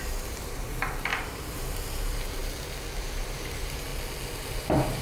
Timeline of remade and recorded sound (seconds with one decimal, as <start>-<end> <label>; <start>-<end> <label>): 0.0-2.4 remade; 2.4-3.0 recorded; 3.0-3.9 remade; 3.9-4.6 recorded; 4.6-5.0 remade